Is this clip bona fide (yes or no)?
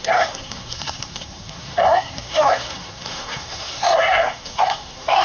no